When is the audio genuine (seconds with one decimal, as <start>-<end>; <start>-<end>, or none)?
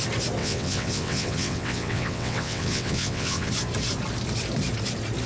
0.0-0.4; 3.5-5.3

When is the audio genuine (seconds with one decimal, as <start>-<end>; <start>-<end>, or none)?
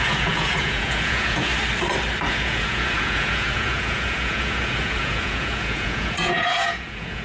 1.5-2.3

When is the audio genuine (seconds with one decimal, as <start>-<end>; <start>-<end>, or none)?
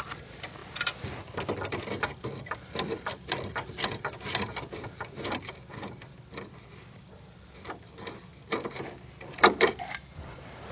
0.0-10.7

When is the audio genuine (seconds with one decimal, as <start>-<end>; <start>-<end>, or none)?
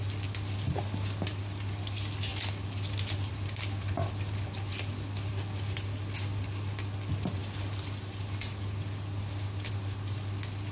0.0-10.7